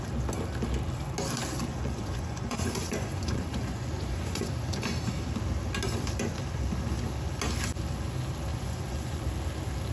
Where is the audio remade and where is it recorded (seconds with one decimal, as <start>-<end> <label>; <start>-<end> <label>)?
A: 0.0-1.7 recorded; 1.7-4.5 remade; 4.5-8.5 recorded; 8.5-9.2 remade; 9.2-9.9 recorded